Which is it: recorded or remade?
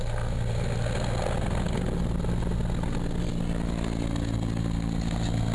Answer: recorded